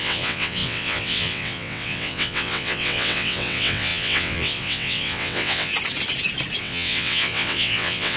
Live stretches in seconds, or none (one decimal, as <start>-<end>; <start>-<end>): 5.7-6.6

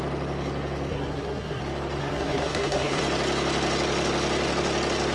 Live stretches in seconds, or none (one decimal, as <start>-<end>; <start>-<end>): 0.0-0.9; 1.6-2.0; 3.0-5.1